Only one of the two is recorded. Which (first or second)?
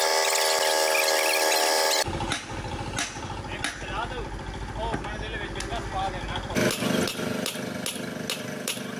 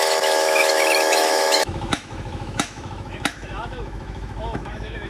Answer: first